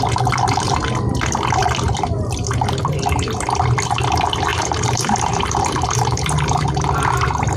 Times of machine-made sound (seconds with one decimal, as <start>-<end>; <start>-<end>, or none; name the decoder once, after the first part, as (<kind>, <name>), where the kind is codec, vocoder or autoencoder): 4.5-6.9 (vocoder, BigVGAN v2)